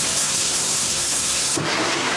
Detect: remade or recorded remade